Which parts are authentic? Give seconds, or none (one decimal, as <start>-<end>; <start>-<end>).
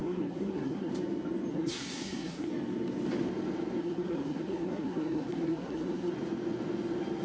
0.9-1.5; 2.5-3.8; 6.1-7.2